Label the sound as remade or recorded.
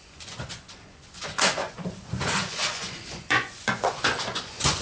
remade